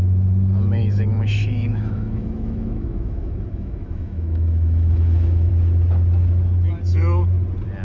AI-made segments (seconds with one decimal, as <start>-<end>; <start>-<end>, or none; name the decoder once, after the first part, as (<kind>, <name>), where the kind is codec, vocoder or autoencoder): 0.8-5.5 (autoencoder, DAC-VAE)